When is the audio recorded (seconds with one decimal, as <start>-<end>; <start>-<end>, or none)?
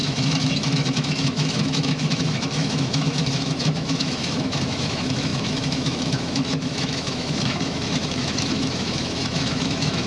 none